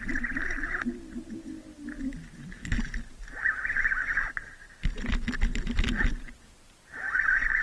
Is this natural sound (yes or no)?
yes